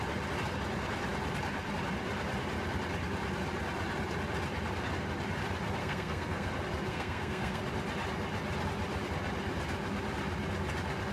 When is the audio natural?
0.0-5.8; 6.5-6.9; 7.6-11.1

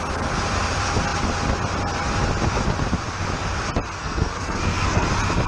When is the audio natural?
0.0-4.0; 5.1-5.5

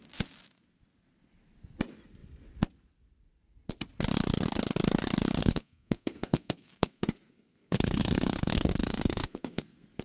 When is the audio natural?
0.0-5.4

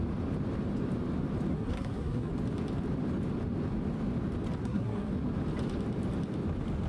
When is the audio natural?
0.0-1.5; 2.3-4.6; 5.1-6.9

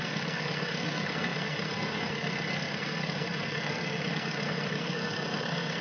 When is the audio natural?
none

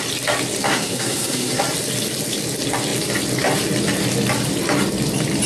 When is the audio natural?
0.0-0.7; 1.6-5.5

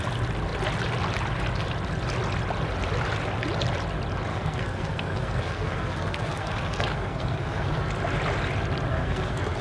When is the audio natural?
0.0-4.3; 7.9-8.9

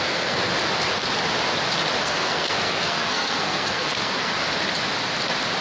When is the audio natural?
0.5-2.0; 4.3-5.6